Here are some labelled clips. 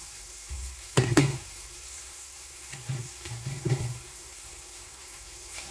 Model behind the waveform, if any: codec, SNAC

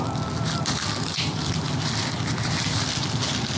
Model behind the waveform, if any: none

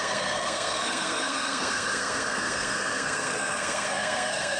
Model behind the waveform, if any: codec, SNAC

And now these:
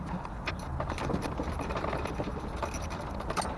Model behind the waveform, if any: none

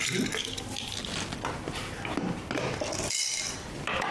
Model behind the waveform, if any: none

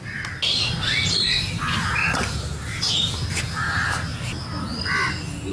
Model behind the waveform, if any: none